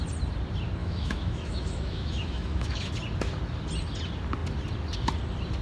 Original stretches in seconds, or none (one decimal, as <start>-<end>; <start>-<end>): 0.0-0.8; 2.9-5.6